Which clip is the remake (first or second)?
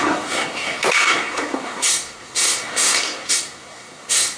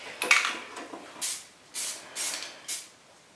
first